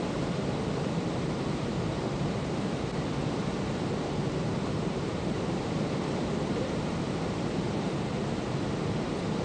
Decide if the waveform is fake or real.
fake